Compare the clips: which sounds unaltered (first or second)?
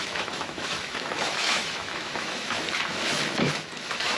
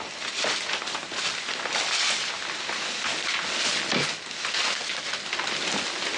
second